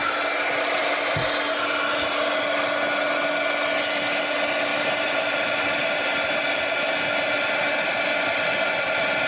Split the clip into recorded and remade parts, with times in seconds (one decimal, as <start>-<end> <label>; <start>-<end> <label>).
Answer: 0.0-4.7 recorded; 4.7-6.0 remade; 6.0-9.3 recorded